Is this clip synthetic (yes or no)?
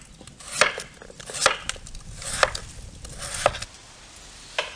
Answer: no